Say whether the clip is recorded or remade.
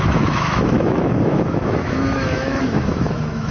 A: remade